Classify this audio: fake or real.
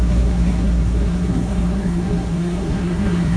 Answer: fake